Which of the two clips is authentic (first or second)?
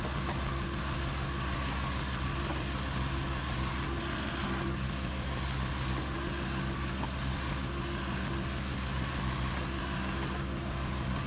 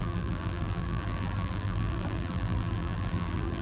first